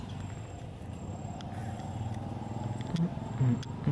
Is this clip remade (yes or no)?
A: no